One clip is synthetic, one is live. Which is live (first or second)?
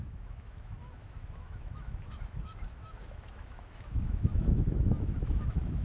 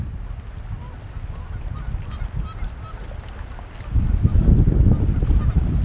second